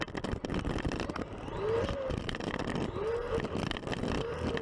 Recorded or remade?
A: recorded